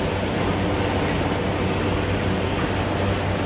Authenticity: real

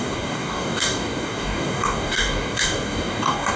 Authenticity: fake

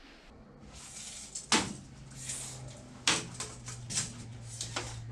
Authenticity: real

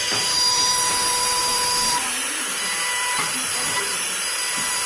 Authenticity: fake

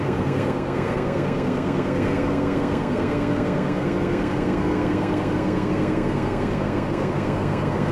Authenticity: fake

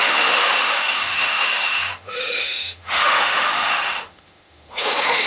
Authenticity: fake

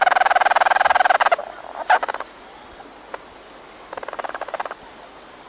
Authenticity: real